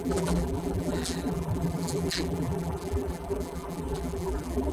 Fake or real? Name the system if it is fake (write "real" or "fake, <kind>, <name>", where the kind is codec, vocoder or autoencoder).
fake, vocoder, BigVGAN v2